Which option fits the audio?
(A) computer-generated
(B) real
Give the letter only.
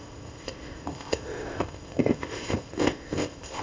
A